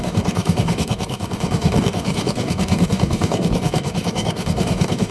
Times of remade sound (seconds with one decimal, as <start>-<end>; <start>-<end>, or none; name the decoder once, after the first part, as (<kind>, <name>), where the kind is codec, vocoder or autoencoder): 0.0-5.1 (codec, DAC)